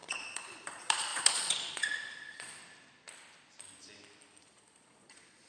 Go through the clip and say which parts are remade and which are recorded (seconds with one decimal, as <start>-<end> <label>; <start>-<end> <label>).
0.0-2.6 remade; 2.6-4.4 recorded; 4.4-5.5 remade